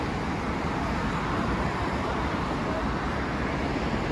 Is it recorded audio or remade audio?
recorded